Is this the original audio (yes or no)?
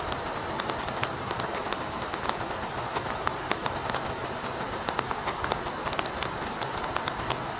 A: yes